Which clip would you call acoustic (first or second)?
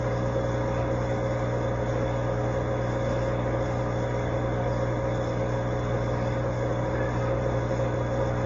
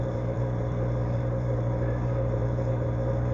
first